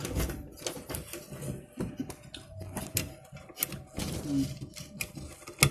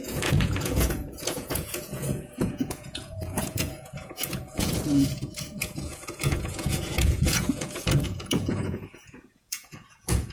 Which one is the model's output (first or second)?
second